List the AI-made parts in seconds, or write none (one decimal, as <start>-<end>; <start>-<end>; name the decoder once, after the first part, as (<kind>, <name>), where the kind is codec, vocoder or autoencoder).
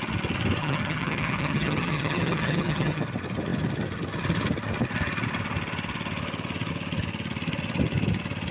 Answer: 0.6-3.0 (vocoder, HiFi-GAN)